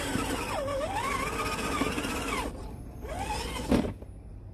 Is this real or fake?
real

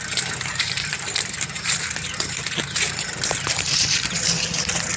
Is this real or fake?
real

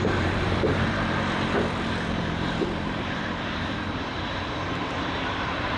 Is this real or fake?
fake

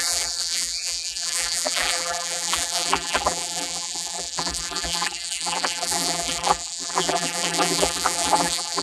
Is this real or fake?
fake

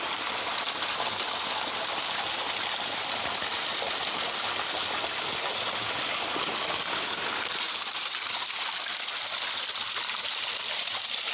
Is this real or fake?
real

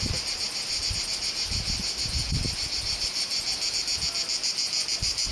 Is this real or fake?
real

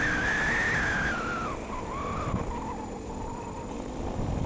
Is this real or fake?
fake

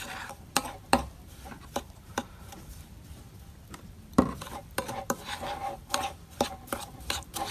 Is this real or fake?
fake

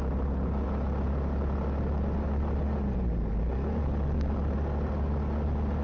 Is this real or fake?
real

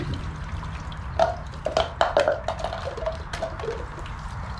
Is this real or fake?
real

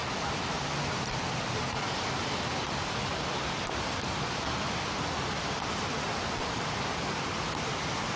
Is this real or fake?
fake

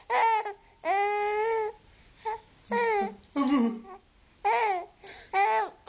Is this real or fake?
real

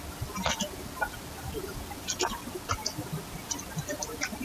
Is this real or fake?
real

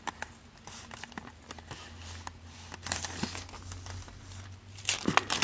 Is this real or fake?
real